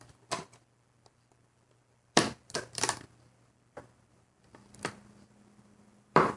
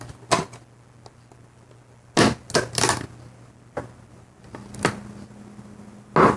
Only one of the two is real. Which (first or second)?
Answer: second